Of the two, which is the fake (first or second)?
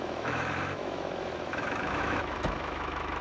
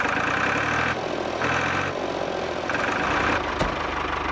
first